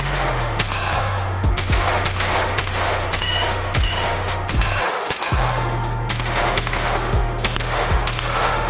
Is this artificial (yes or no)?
yes